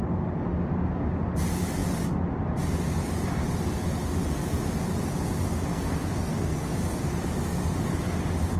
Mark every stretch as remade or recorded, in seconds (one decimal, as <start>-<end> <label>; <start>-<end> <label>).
0.0-5.7 recorded; 5.7-6.7 remade; 6.7-8.6 recorded